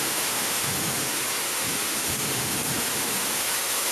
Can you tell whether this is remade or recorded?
remade